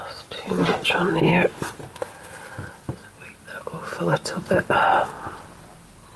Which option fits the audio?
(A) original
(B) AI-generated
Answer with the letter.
A